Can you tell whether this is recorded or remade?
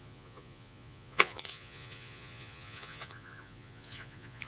remade